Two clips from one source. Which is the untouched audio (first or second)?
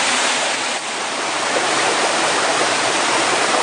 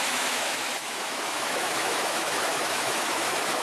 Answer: first